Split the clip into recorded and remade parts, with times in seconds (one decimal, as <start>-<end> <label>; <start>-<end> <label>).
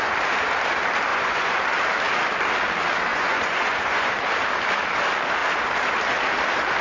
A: 0.0-1.1 recorded; 1.1-1.6 remade; 1.6-3.1 recorded; 3.1-4.1 remade; 4.1-6.8 recorded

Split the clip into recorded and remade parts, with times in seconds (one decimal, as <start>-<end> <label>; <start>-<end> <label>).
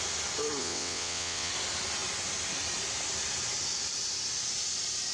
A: 0.0-0.6 recorded; 0.6-1.5 remade; 1.5-5.1 recorded